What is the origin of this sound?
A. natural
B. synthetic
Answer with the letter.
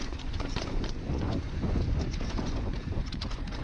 B